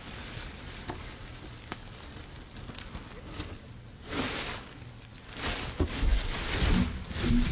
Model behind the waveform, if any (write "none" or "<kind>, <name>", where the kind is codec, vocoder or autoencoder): none